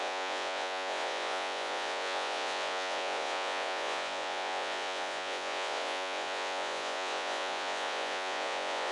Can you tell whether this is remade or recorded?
remade